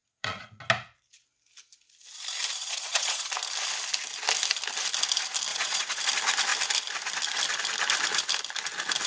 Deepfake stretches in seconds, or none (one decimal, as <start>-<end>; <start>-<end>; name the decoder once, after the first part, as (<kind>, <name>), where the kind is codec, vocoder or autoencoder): 0.0-0.6 (vocoder, Vocos); 2.6-3.3; 5.5-6.0